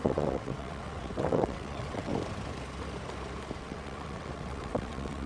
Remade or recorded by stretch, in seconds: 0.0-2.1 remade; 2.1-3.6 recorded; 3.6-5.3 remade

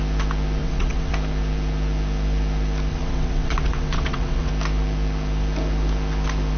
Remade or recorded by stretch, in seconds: 0.0-0.6 recorded; 0.6-1.1 remade; 1.1-2.9 recorded; 2.9-4.5 remade; 4.5-6.6 recorded

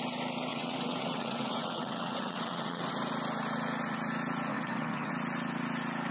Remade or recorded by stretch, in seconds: 0.0-0.5 recorded; 0.5-2.9 remade; 2.9-4.5 recorded; 4.5-5.1 remade; 5.1-6.1 recorded

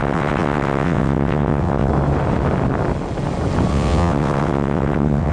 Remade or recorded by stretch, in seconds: 0.0-1.9 remade; 1.9-3.7 recorded; 3.7-5.3 remade

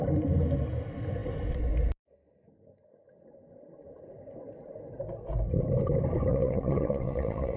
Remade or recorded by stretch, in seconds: 0.0-6.3 recorded; 6.3-7.6 remade